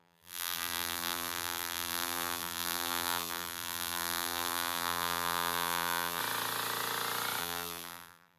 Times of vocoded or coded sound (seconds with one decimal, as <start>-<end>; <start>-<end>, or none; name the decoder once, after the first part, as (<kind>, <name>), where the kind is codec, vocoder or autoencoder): 0.0-6.2 (vocoder, BigVGAN v2); 7.4-8.4